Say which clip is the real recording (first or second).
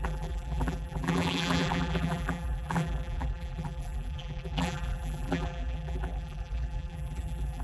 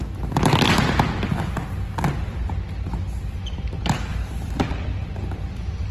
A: second